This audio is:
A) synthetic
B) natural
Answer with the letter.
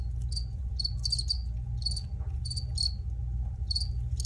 B